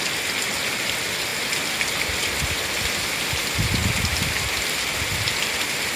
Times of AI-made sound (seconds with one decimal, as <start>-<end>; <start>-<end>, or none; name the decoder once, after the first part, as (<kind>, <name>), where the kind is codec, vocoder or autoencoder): none